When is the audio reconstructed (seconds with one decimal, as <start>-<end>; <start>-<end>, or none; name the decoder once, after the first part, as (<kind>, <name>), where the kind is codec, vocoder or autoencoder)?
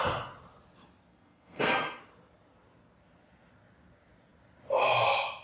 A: 1.1-2.0 (codec, SNAC)